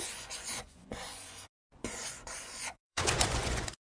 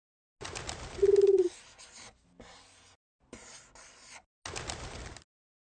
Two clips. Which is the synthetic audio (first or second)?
first